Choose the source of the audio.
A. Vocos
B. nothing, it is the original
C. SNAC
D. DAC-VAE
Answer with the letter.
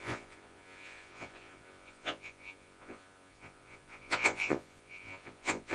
A